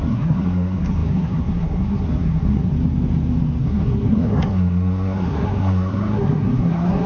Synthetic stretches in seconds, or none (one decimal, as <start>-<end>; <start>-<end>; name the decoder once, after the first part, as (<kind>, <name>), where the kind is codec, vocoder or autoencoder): 0.0-2.7 (codec, SNAC); 3.6-7.1